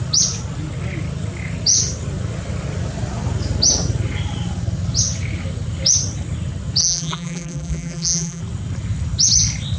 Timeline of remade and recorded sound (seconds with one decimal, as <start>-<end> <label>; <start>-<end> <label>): 0.0-6.8 recorded; 6.8-8.4 remade; 8.4-9.8 recorded